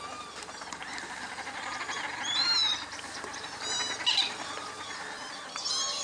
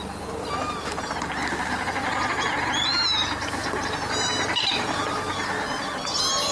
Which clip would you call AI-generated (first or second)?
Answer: first